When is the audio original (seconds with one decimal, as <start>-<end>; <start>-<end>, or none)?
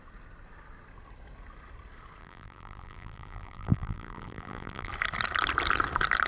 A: 0.0-2.2; 4.9-6.3